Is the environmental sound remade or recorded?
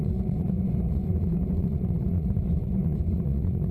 remade